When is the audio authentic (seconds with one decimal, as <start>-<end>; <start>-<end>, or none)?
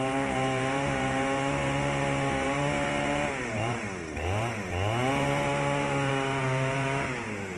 none